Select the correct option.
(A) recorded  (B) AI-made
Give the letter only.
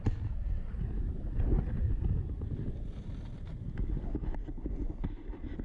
A